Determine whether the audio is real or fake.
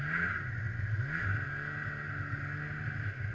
real